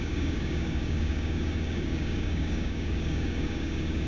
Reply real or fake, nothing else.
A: fake